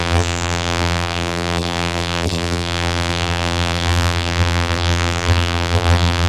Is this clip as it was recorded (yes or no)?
no